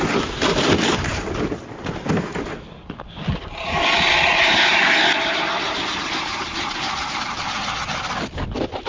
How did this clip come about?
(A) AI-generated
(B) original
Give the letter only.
A